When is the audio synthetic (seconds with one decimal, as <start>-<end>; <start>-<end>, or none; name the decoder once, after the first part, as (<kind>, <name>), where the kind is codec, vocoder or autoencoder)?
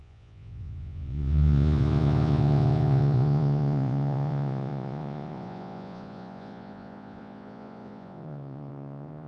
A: 0.0-9.3 (vocoder, Vocos)